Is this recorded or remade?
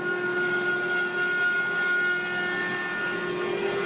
recorded